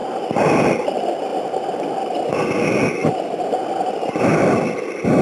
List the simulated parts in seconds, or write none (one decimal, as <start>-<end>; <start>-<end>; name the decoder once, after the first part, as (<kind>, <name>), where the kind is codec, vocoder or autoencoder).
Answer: none